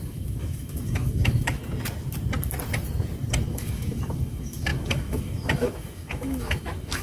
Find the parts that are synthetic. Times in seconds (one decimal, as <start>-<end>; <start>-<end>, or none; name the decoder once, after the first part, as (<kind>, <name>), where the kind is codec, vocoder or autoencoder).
0.0-1.6 (autoencoder, DAC-VAE); 3.5-7.0